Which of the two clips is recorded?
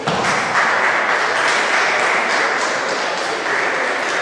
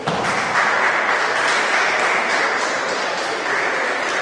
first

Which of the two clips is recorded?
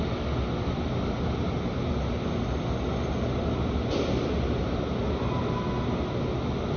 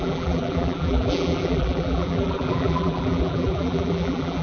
first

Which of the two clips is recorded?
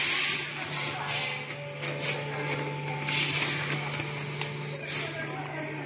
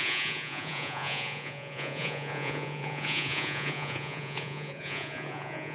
first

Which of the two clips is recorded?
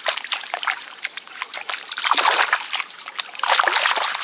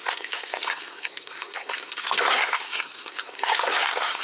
first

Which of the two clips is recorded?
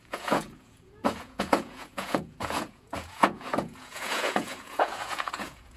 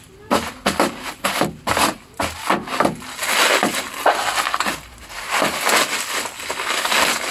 second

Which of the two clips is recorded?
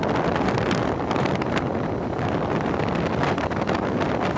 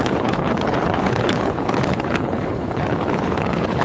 first